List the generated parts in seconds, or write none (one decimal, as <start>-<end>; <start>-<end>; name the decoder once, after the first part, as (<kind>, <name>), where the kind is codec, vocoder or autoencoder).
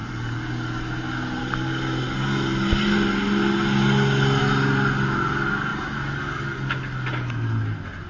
none